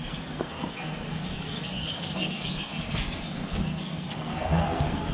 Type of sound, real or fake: fake